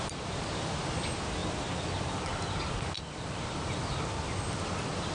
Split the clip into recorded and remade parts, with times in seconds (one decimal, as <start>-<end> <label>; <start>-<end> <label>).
0.0-5.1 recorded